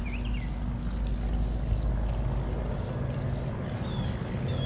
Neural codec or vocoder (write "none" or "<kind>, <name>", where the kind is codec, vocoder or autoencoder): none